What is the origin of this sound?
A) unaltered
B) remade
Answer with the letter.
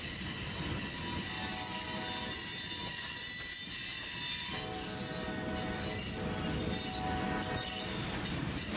A